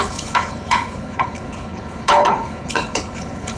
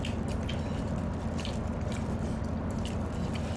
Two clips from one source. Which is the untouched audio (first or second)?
second